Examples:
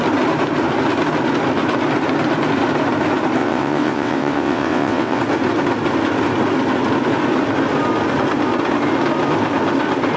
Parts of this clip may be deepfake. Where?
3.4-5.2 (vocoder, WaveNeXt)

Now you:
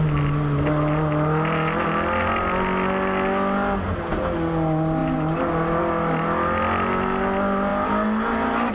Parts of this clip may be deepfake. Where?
none

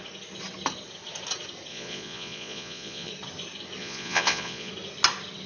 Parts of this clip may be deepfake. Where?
1.7-3.1 (vocoder, Vocos); 3.8-4.7

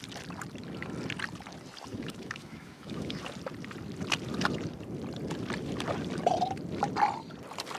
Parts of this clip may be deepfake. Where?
1.9-3.2 (autoencoder, DAC-VAE)

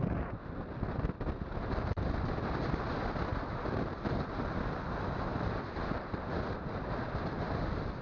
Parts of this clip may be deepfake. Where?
3.3-5.6 (vocoder, BigVGAN v2)

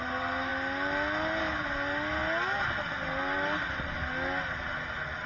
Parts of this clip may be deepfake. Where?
none